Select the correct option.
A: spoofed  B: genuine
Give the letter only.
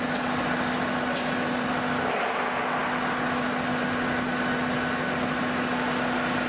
B